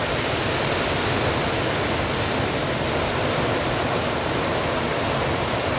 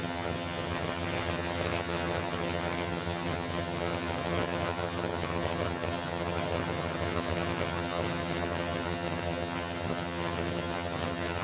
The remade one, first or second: second